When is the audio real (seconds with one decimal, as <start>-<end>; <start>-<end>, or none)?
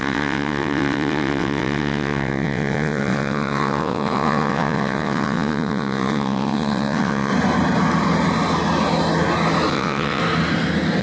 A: 7.3-9.7; 10.2-11.0